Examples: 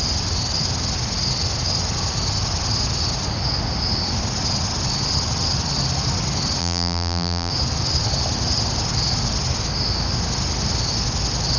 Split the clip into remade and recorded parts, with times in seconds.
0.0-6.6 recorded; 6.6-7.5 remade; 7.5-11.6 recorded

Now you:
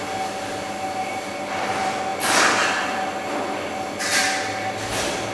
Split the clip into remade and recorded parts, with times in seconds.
0.0-1.0 recorded; 1.0-1.5 remade; 1.5-5.3 recorded

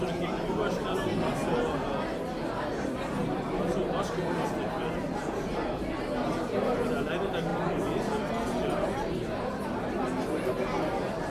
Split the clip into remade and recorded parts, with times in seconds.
0.0-11.3 recorded

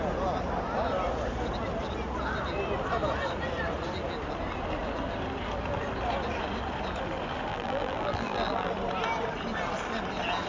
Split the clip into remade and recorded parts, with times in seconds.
0.0-7.5 recorded; 7.5-8.7 remade; 8.7-10.5 recorded

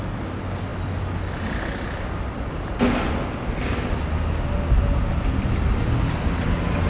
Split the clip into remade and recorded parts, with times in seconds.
0.0-6.9 recorded

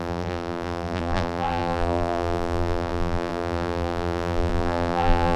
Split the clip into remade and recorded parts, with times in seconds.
0.0-5.4 remade

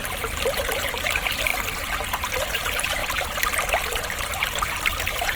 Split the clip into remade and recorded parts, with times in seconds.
0.0-1.5 remade; 1.5-2.3 recorded; 2.3-3.0 remade; 3.0-3.8 recorded; 3.8-5.3 remade